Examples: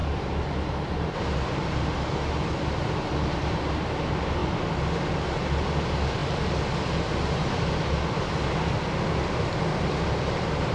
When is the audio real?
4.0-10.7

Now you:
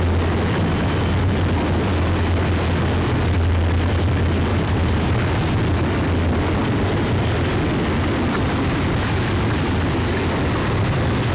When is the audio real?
0.0-4.5; 5.2-11.3

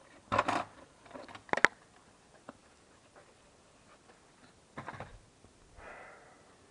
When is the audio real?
1.2-6.7